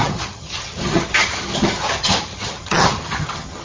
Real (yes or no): no